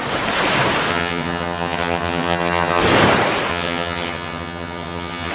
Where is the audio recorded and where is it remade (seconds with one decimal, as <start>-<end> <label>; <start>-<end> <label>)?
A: 0.0-0.9 recorded; 0.9-2.8 remade; 2.8-3.5 recorded; 3.5-5.3 remade